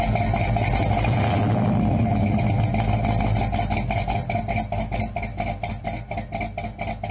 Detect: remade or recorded recorded